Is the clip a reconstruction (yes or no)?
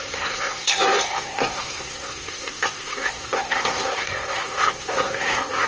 yes